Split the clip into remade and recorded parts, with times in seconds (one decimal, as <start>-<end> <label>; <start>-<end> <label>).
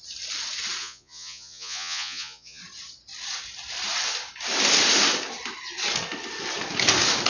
0.0-0.8 recorded; 0.8-2.6 remade; 2.6-7.3 recorded